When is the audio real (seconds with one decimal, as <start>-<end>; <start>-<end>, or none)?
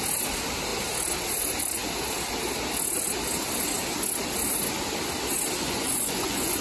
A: 0.0-5.6